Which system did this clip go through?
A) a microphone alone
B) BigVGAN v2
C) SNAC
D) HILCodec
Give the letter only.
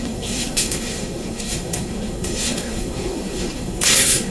C